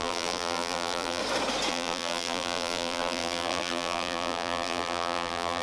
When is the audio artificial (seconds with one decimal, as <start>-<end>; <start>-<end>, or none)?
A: 0.0-1.2; 1.7-5.6